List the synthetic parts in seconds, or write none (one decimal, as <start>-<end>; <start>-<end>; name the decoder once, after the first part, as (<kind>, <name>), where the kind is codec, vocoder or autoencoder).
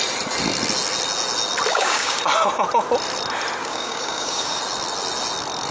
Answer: 1.7-2.2 (codec, DAC); 3.6-4.6